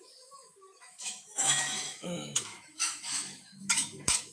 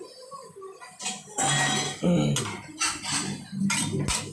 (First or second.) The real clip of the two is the second